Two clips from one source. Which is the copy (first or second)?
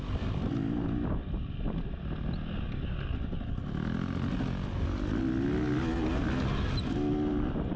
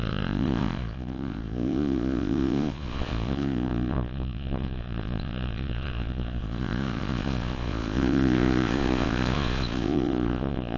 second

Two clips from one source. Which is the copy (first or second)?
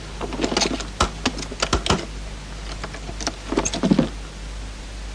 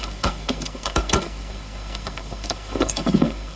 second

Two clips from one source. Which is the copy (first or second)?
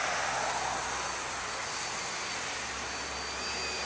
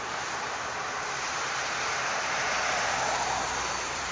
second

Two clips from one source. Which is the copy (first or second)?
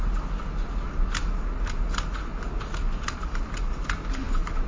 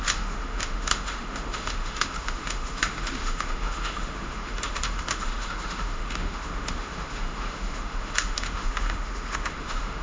second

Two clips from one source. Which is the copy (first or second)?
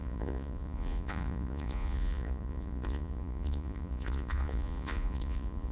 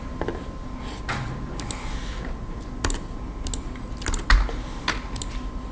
first